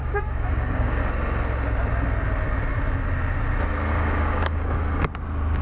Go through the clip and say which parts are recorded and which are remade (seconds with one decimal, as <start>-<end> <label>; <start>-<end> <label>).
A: 0.0-1.0 remade; 1.0-3.9 recorded; 3.9-4.8 remade; 4.8-5.6 recorded